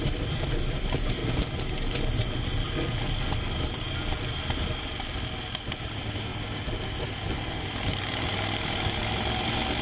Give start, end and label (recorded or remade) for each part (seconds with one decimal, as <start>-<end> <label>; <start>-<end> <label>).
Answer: 0.0-1.2 remade; 1.2-5.6 recorded; 5.6-6.3 remade; 6.3-7.5 recorded; 7.5-9.8 remade